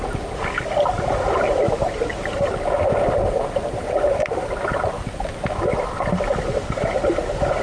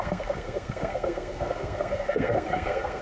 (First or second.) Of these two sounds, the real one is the first